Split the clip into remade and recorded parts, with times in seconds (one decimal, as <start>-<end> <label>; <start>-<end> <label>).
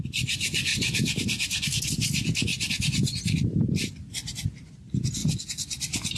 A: 0.0-0.7 recorded; 0.7-1.9 remade; 1.9-2.5 recorded; 2.5-3.4 remade; 3.4-6.2 recorded